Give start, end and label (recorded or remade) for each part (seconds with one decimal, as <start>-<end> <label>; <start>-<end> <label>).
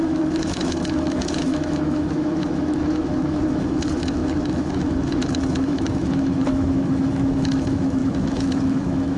0.0-9.2 remade